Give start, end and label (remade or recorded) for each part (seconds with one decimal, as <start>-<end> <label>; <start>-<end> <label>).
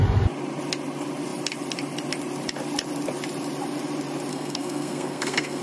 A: 0.0-4.3 recorded; 4.3-5.6 remade